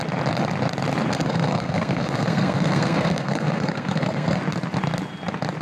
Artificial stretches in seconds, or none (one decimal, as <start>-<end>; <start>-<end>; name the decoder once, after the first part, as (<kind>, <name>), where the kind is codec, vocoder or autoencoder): 1.1-4.4 (codec, SNAC)